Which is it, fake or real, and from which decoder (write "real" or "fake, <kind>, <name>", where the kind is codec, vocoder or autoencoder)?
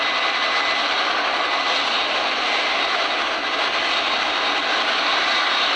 real